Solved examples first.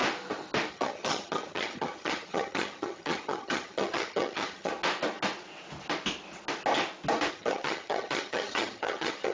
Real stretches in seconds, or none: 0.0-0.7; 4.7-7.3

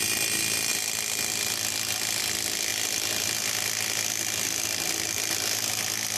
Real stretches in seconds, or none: 0.0-6.2

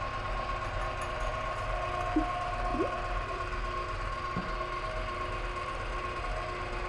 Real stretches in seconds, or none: 0.0-6.9